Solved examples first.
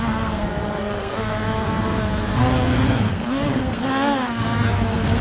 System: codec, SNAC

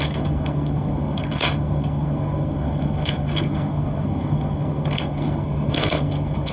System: codec, SNAC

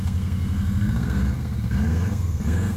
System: codec, SNAC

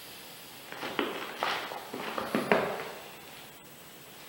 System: none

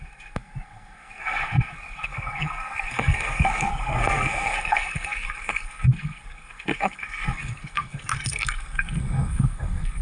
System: codec, SNAC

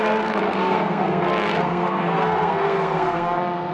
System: codec, SNAC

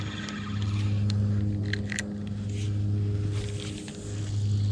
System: none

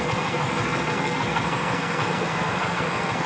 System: codec, SNAC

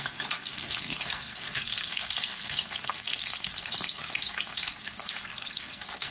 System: codec, SNAC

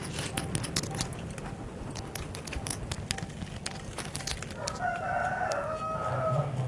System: none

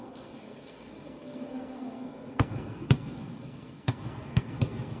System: codec, SNAC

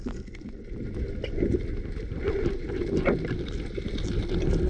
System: none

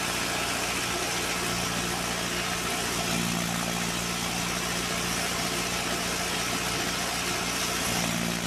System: none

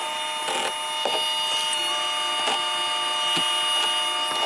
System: none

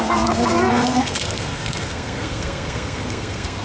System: codec, SNAC